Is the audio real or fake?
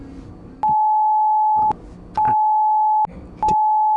real